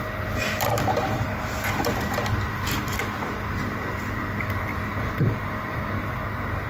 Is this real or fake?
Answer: real